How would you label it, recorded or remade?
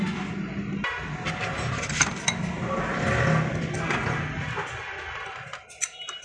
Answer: recorded